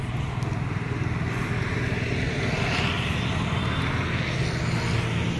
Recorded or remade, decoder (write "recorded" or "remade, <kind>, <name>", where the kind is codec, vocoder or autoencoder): recorded